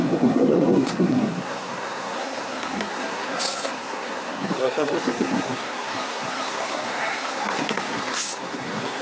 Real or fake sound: fake